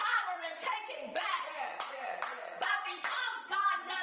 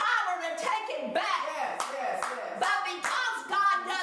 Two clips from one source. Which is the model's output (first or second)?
first